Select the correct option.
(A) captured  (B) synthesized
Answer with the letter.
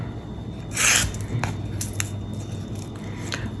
A